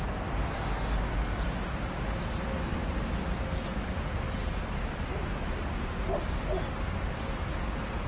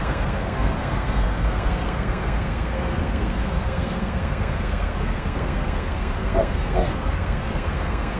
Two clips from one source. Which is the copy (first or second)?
second